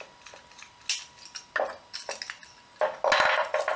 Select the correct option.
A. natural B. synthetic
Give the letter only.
A